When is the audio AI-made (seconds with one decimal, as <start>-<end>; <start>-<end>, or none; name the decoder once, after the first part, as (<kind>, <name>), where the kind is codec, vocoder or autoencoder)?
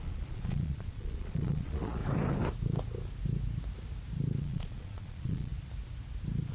0.0-2.0 (vocoder, Vocos); 4.4-5.5